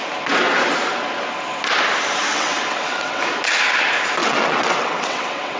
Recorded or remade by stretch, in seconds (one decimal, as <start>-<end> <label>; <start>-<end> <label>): 0.0-2.3 recorded; 2.3-3.2 remade; 3.2-4.2 recorded; 4.2-5.6 remade